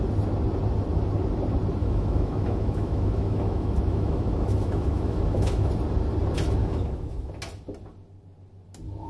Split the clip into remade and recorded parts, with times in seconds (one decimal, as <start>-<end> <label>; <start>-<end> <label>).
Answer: 0.0-1.8 recorded; 1.8-5.7 remade; 5.7-6.6 recorded; 6.6-7.3 remade; 7.3-9.1 recorded